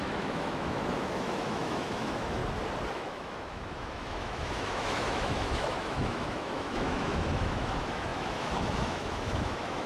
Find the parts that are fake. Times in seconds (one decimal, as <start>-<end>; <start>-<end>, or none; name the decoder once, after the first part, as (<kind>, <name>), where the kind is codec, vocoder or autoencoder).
0.0-2.4 (autoencoder, DAC-VAE); 2.9-9.9